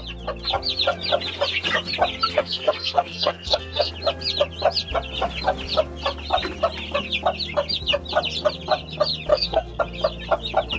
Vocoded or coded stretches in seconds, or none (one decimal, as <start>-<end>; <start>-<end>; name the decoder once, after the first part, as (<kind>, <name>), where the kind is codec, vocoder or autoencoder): 2.3-3.9 (codec, SNAC); 9.3-9.8